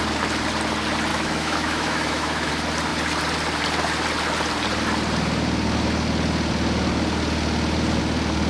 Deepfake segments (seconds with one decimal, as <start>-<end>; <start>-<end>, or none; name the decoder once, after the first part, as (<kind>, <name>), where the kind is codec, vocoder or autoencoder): 1.1-2.5 (autoencoder, DAC-VAE)